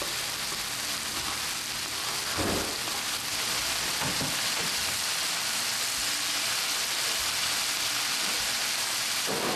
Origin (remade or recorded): recorded